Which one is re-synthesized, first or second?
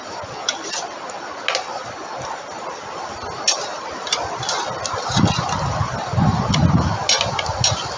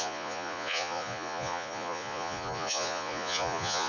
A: second